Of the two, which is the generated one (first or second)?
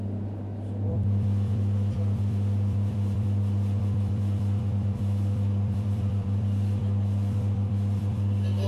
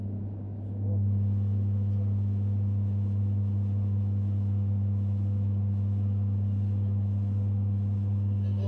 first